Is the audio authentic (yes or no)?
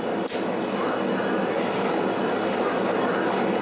yes